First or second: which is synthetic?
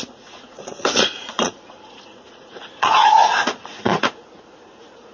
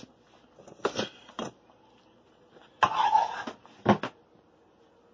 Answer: first